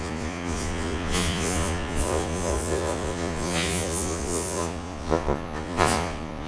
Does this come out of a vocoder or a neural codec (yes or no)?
yes